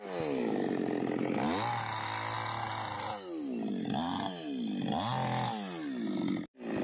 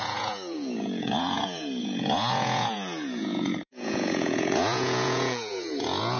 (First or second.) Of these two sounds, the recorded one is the first